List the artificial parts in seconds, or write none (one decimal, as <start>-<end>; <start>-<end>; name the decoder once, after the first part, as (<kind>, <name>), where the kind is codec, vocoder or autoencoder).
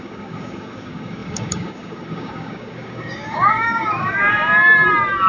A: 0.0-4.5 (codec, DAC)